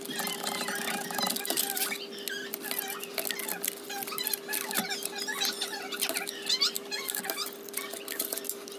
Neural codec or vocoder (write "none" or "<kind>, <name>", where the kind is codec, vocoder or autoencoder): none